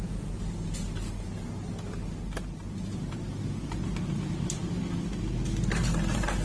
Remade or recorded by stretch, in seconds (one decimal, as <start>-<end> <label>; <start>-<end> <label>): 0.0-6.4 recorded

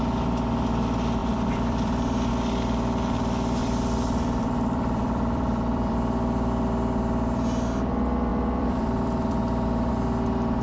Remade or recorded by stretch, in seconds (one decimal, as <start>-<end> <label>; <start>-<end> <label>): 0.0-1.2 recorded; 1.2-2.3 remade; 2.3-3.6 recorded; 3.6-6.5 remade; 6.5-8.3 recorded; 8.3-9.9 remade; 9.9-10.6 recorded

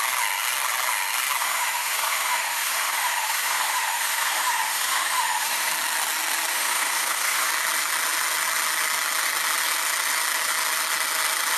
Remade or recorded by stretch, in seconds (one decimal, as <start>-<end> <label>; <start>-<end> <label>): 0.0-1.4 recorded; 1.4-5.7 remade; 5.7-6.5 recorded; 6.5-7.5 remade; 7.5-11.6 recorded